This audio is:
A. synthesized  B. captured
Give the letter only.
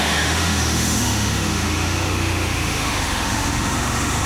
A